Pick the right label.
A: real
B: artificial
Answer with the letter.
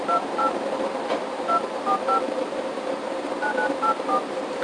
B